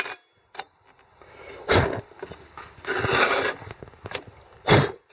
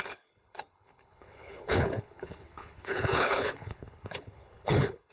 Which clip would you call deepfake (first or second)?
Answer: second